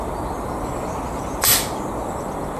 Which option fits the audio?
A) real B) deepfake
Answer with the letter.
A